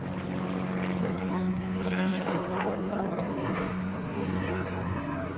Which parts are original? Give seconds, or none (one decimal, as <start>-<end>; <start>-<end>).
0.0-1.0